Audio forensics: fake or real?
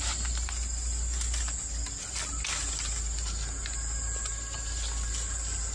real